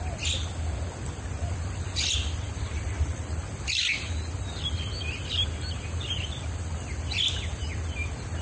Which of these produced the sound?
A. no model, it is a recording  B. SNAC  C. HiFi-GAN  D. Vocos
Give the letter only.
A